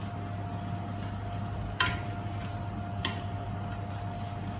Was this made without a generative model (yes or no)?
yes